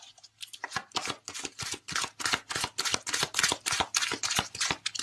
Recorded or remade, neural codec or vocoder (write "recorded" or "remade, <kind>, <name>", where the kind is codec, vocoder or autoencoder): recorded